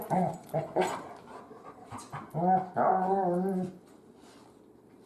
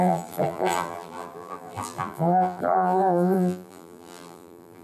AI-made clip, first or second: second